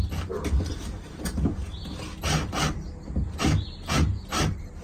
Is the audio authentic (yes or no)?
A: yes